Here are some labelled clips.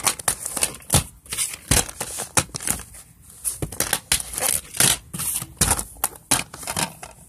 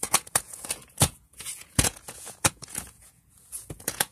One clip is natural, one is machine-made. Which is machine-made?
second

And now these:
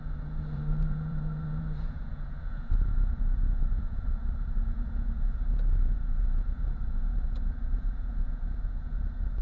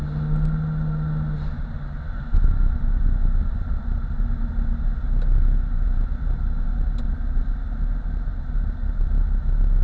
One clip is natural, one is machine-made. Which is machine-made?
first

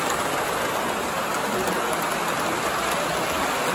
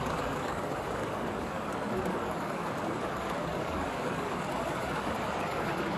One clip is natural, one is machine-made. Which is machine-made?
second